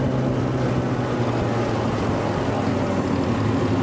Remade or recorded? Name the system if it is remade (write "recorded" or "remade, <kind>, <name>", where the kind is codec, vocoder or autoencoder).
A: recorded